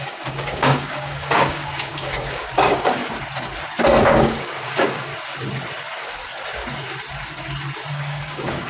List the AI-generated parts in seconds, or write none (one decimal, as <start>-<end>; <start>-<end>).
0.0-3.0; 4.0-5.1; 5.8-6.3; 7.9-8.7